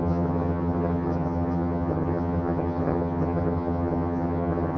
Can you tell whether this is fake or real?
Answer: fake